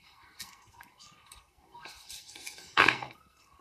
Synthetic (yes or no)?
yes